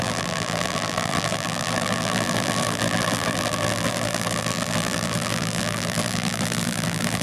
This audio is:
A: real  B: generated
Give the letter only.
B